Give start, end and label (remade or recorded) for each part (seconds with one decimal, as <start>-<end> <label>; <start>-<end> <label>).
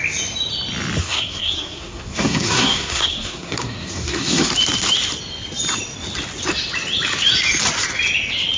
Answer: 0.0-1.0 recorded; 1.0-4.5 remade; 4.5-8.6 recorded